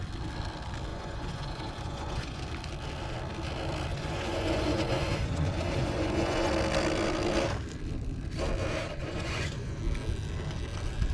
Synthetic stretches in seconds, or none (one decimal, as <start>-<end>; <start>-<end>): 0.9-2.4; 3.9-6.5; 9.0-9.8